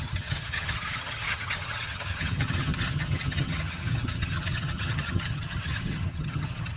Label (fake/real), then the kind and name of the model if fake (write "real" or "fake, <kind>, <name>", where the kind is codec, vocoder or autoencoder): fake, vocoder, HiFi-GAN